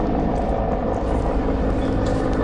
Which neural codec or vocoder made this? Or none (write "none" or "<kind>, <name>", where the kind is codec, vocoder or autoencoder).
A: none